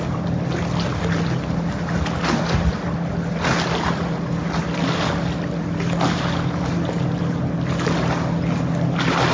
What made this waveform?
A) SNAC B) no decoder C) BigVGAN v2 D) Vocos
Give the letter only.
B